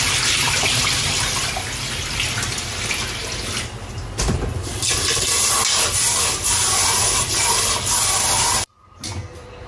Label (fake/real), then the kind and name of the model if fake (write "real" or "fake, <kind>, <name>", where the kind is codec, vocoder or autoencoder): real